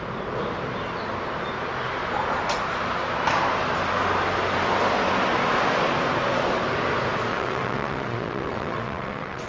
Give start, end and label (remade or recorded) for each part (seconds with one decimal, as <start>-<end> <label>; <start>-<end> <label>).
0.0-7.3 recorded; 7.3-9.5 remade